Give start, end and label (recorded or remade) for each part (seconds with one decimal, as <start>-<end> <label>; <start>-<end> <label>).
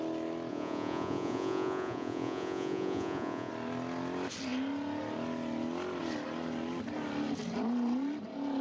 0.0-0.5 recorded; 0.5-3.5 remade; 3.5-8.6 recorded